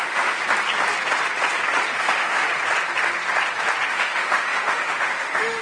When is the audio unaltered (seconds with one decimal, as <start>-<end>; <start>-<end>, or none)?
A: 0.4-2.0; 2.4-3.9